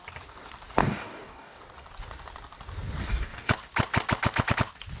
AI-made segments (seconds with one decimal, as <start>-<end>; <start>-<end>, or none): 0.8-1.6; 3.0-3.5